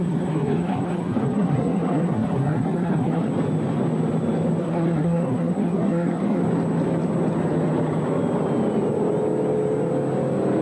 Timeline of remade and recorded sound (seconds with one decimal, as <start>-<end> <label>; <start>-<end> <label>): 0.0-3.3 remade; 3.3-4.6 recorded; 4.6-6.4 remade; 6.4-10.6 recorded